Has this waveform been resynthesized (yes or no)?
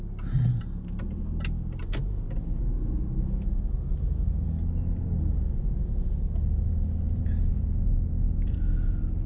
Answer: no